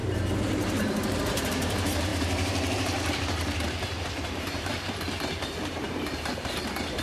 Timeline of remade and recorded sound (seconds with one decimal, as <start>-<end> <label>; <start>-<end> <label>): 0.0-7.0 remade